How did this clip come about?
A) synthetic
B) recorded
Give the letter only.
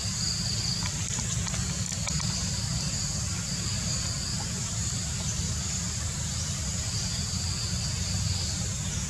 B